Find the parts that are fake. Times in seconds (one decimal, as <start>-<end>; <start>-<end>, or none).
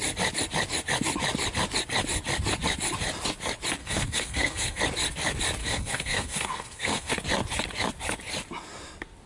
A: 3.8-4.8; 5.6-7.1